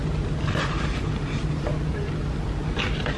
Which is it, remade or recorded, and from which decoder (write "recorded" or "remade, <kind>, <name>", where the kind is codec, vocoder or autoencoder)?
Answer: recorded